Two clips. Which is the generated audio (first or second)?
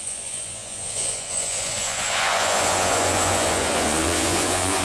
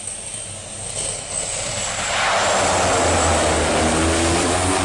first